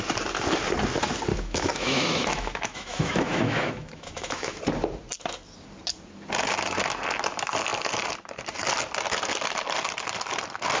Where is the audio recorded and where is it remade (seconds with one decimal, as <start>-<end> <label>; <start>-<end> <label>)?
0.0-1.3 recorded; 1.3-4.6 remade; 4.6-10.8 recorded